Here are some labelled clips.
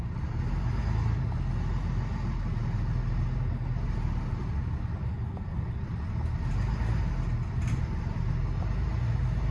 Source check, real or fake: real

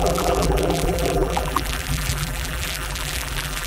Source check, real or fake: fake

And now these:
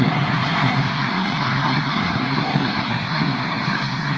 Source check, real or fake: fake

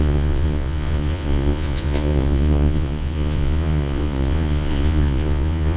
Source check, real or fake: fake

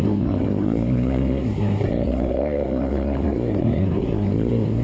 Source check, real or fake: fake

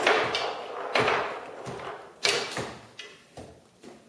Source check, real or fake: real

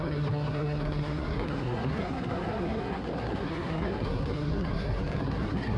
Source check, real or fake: fake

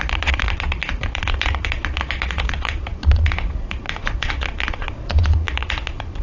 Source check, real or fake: fake